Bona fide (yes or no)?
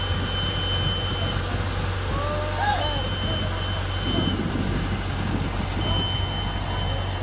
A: yes